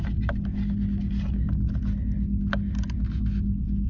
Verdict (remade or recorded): recorded